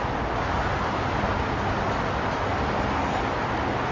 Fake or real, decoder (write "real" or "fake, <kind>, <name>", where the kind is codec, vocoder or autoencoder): real